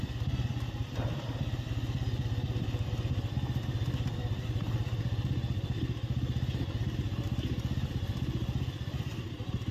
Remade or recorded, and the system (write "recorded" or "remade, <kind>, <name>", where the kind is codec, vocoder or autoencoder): recorded